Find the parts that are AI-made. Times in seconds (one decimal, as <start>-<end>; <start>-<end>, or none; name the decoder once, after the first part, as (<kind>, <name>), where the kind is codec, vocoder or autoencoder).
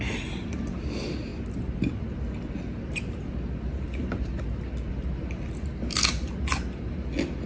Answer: none